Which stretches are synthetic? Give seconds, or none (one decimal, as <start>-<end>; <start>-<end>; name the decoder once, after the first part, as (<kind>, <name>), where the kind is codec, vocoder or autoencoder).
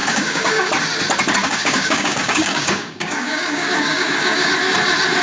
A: 0.0-0.7 (codec, DAC); 1.4-4.5